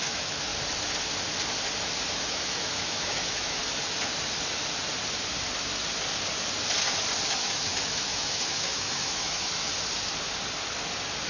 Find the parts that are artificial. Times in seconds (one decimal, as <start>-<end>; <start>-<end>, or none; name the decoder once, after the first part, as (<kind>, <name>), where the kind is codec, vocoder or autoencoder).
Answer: 0.0-0.5 (autoencoder, DAC-VAE); 2.1-3.6; 7.3-9.7